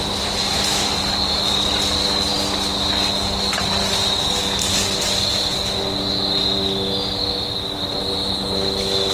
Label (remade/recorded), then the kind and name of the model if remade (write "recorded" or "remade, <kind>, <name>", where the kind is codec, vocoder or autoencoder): recorded